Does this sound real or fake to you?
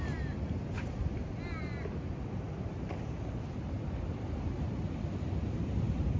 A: real